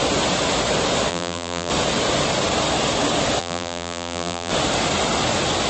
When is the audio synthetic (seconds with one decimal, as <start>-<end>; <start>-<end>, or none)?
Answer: 1.1-1.7; 3.4-4.5